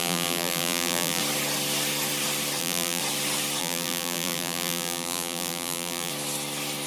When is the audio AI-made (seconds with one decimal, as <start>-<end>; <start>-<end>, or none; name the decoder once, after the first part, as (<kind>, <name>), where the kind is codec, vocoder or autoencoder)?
0.0-1.2 (vocoder, BigVGAN v2); 2.6-3.0; 3.6-6.1